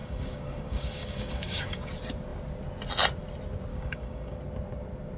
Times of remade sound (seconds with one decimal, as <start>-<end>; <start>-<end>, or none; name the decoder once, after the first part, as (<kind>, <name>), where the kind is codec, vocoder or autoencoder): 0.0-1.9 (codec, DAC); 3.7-4.4